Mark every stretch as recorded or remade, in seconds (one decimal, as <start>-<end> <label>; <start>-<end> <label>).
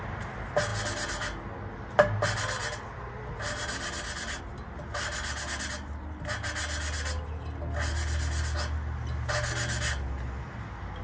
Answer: 0.0-11.0 recorded